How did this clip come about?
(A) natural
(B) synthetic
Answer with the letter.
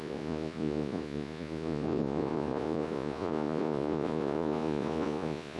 B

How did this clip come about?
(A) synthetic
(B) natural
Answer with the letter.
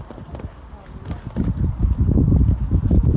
B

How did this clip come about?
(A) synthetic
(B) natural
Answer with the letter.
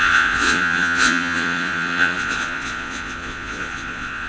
A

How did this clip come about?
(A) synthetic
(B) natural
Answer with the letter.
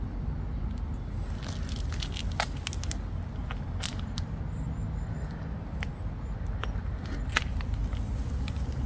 B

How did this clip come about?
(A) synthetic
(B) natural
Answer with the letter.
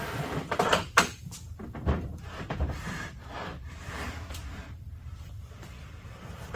A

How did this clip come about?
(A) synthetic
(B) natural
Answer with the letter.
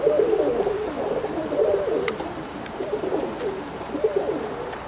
A